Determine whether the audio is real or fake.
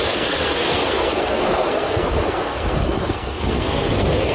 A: fake